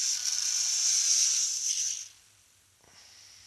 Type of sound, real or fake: real